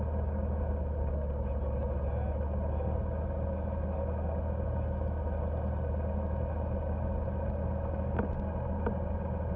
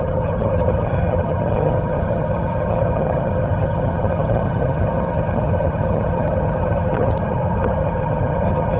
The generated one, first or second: second